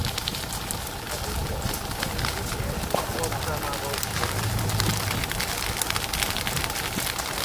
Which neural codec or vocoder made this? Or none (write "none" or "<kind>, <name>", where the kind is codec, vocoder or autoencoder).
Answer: none